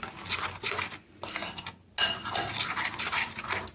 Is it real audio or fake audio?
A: real